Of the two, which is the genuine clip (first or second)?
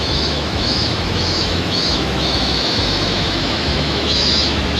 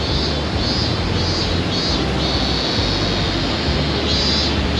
second